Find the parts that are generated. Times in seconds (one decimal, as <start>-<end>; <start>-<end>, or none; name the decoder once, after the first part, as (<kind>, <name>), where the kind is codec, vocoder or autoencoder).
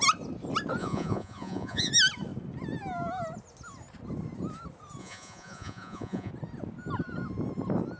0.8-1.9 (vocoder, Vocos); 5.0-6.3